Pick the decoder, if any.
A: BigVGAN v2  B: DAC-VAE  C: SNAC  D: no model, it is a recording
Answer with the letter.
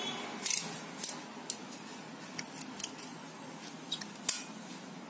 D